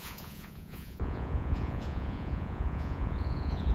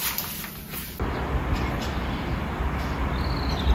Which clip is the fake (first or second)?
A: first